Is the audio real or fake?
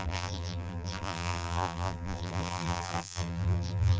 fake